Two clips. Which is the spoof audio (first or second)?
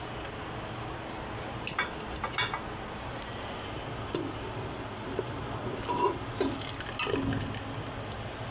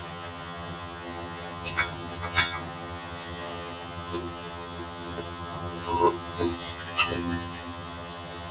second